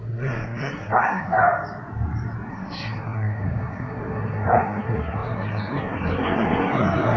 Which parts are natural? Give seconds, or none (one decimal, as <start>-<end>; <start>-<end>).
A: 1.4-2.5